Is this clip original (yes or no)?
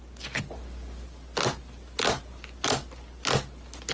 yes